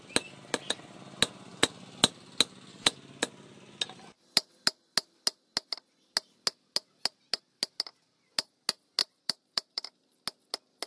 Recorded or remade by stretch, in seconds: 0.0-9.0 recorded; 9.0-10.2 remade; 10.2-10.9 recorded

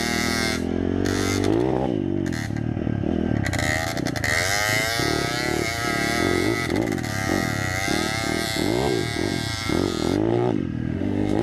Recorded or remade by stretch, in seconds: 0.0-10.3 recorded; 10.3-11.4 remade

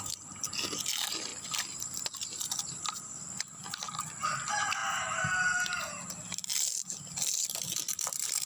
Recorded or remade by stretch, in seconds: 0.0-8.5 recorded

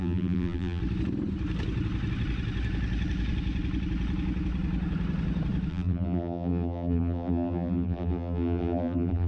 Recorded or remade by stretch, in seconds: 0.0-0.8 remade; 0.8-5.7 recorded; 5.7-9.3 remade

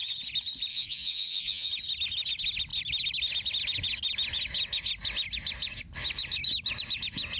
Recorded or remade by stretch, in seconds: 0.0-0.7 recorded; 0.7-1.7 remade; 1.7-7.4 recorded

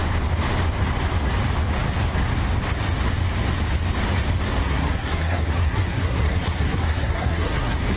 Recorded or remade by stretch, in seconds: 0.0-4.6 recorded; 4.6-8.0 remade